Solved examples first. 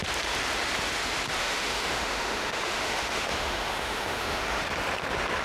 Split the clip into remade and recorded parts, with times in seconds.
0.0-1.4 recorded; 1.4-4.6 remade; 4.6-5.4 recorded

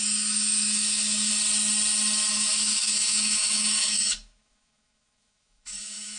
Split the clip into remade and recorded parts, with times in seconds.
0.0-1.3 remade; 1.3-2.3 recorded; 2.3-6.2 remade

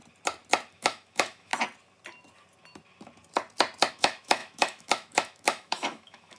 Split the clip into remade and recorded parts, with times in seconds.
0.0-0.7 recorded; 0.7-1.5 remade; 1.5-3.9 recorded; 3.9-6.4 remade